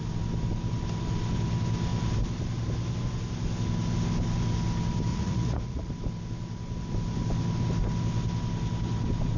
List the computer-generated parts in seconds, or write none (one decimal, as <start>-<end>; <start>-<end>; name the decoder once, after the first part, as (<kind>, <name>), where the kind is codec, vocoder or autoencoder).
5.1-5.9 (vocoder, Vocos)